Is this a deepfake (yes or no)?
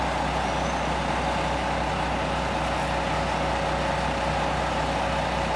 no